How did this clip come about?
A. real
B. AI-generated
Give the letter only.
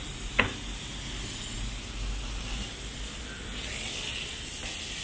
A